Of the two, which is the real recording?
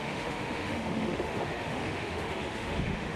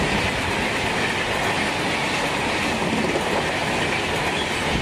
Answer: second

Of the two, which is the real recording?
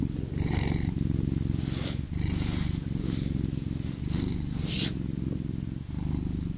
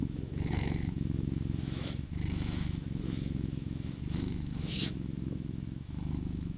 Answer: first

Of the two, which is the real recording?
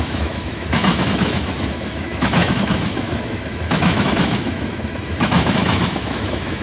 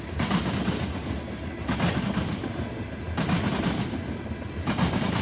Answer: second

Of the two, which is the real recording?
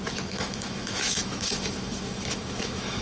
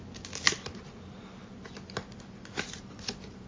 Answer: second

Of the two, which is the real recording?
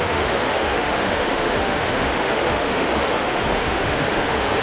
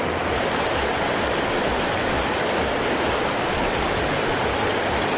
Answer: second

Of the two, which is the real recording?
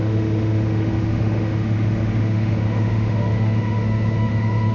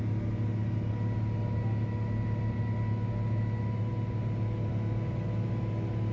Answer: second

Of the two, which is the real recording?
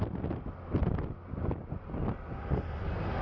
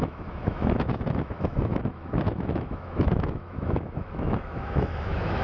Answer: first